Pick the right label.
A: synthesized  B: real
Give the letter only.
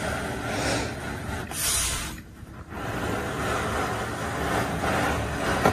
B